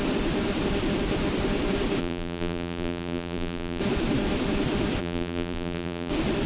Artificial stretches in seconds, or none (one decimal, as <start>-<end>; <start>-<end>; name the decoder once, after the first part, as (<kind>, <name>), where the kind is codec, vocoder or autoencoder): 2.0-3.8 (vocoder, BigVGAN v2); 5.0-6.1